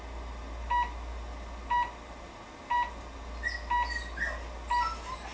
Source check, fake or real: real